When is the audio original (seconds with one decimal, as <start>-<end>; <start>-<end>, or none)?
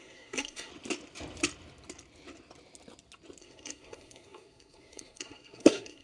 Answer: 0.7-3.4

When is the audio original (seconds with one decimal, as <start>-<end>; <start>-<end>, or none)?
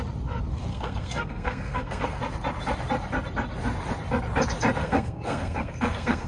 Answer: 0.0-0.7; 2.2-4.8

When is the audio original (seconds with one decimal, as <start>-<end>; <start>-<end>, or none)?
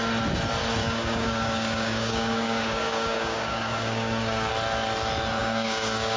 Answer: 0.0-0.8; 4.5-5.4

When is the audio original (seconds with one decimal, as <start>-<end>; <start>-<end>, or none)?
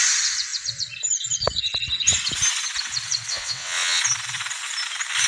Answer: 0.0-3.3; 4.0-5.3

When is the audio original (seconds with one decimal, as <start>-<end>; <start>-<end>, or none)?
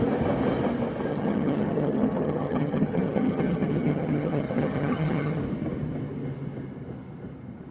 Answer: 0.0-1.1; 5.4-7.7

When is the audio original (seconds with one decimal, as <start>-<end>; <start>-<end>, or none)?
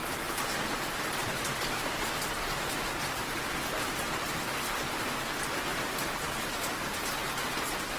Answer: 1.4-3.2; 7.0-8.0